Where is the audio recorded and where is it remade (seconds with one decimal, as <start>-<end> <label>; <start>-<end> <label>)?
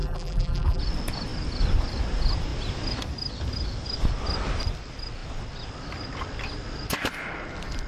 0.0-0.8 remade; 0.8-7.9 recorded